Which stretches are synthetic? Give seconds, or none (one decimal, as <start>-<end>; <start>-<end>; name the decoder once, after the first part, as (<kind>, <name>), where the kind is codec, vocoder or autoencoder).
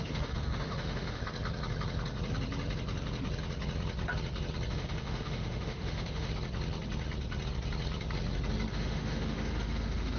0.0-1.2 (autoencoder, DAC-VAE); 4.7-6.3; 8.7-10.2